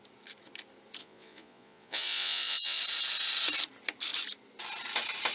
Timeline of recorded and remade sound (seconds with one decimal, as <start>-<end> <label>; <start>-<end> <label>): 0.0-1.0 recorded; 1.0-2.8 remade; 2.8-5.3 recorded